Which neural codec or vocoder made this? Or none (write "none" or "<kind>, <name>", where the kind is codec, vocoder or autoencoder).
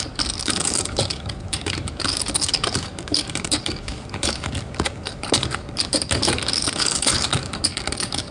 codec, DAC